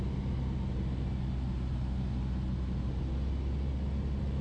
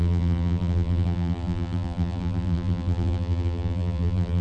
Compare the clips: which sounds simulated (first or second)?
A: second